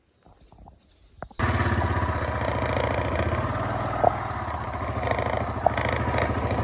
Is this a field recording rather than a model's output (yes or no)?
yes